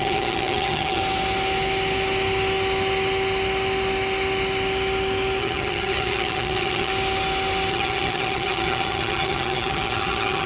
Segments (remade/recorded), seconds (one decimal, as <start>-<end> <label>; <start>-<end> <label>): 0.0-1.0 remade; 1.0-5.4 recorded; 5.4-6.9 remade; 6.9-7.7 recorded; 7.7-10.5 remade